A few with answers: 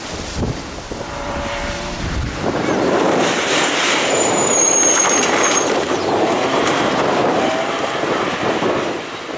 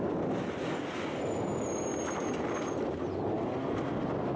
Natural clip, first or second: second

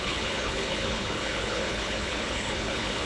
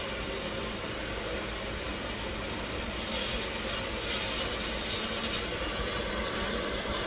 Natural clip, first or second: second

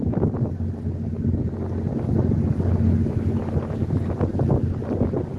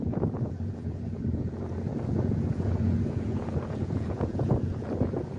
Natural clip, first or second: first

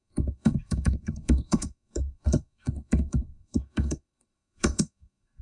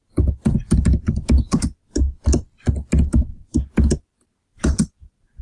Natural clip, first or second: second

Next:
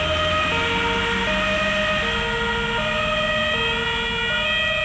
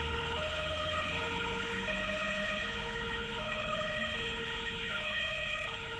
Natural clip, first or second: first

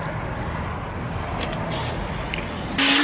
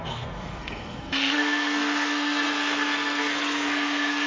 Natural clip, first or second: first